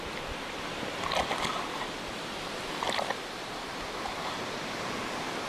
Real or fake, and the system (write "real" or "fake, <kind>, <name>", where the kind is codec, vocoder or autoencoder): real